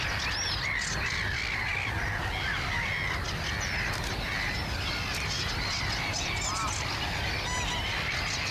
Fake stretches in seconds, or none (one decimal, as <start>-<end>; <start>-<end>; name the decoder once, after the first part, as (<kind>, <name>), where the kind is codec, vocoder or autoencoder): none